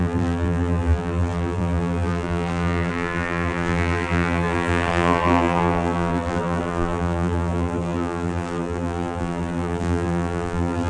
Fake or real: fake